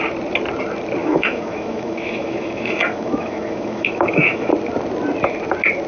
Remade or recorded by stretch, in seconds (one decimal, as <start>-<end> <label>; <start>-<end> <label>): 0.0-1.0 recorded; 1.0-4.5 remade; 4.5-5.9 recorded